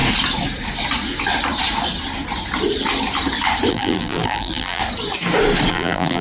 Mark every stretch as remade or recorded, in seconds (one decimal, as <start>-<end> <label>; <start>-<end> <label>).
0.0-3.7 recorded; 3.7-4.8 remade; 4.8-5.7 recorded; 5.7-6.2 remade